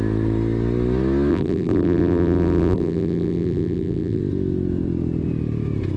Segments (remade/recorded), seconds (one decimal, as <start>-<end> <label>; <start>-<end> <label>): 0.0-1.3 recorded; 1.3-4.2 remade; 4.2-6.0 recorded